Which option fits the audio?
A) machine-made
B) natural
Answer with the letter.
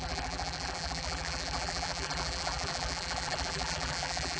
A